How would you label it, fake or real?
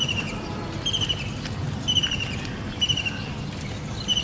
real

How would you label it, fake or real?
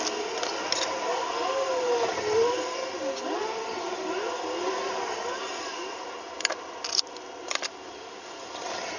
real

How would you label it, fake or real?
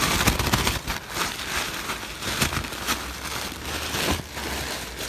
real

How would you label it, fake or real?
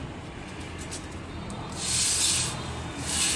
real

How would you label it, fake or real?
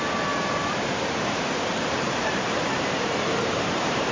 fake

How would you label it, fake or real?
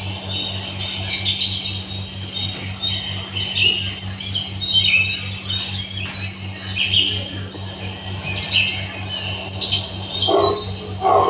real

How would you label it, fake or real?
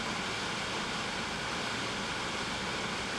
real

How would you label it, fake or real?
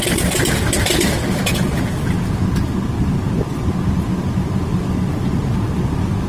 fake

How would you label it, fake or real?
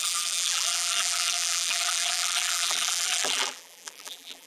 fake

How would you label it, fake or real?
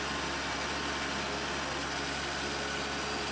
real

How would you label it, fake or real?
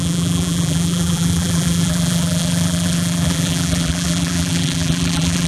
fake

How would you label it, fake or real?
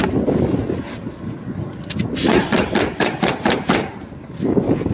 real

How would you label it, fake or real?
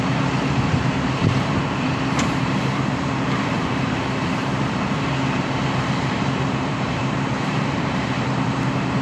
fake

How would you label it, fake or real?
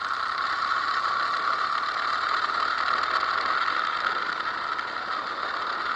real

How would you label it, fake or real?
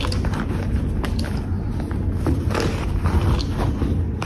real